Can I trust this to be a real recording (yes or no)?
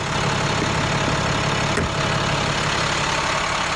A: yes